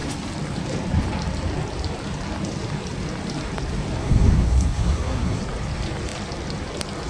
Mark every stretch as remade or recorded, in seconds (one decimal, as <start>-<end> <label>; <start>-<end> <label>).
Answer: 0.0-4.0 recorded; 4.0-5.4 remade; 5.4-7.1 recorded